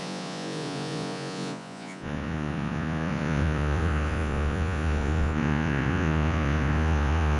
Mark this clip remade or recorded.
remade